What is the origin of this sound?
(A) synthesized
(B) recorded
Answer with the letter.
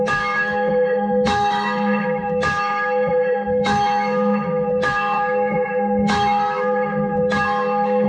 A